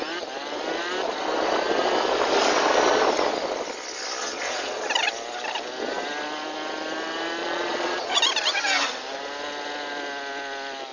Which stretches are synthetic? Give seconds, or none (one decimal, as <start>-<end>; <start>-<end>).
4.2-4.9; 7.4-8.2